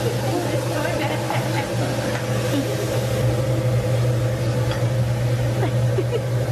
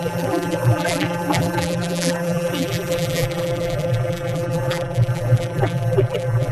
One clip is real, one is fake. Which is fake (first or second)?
second